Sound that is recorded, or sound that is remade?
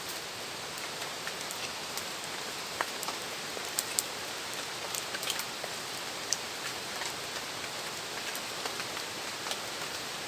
recorded